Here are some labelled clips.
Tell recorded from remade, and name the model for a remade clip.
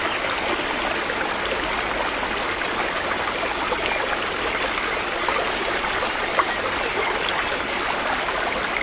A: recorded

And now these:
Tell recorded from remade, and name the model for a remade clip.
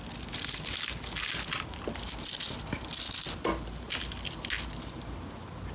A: recorded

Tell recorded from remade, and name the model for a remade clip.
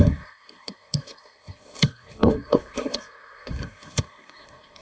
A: remade, codec, SNAC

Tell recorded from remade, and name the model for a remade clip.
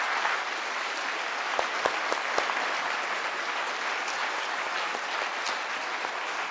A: recorded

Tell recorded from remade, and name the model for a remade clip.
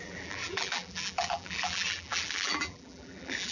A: remade, vocoder, BigVGAN v2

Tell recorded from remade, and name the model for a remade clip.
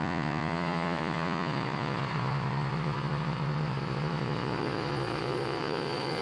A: remade, vocoder, Vocos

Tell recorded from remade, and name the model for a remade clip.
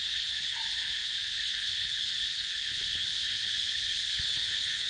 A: remade, codec, HILCodec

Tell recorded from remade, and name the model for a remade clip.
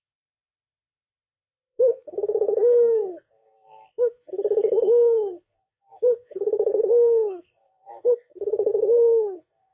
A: remade, codec, SNAC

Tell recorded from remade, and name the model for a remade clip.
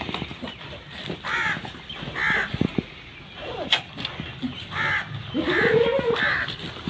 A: recorded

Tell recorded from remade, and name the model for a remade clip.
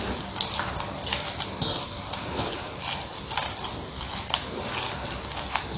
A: recorded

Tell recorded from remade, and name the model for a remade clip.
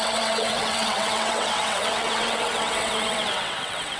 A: remade, vocoder, WaveNeXt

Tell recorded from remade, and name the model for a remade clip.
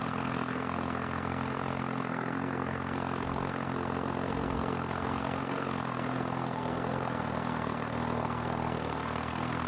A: remade, codec, SNAC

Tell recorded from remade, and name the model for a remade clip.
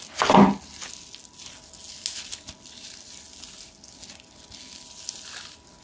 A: recorded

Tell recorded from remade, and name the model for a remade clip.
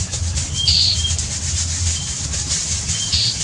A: recorded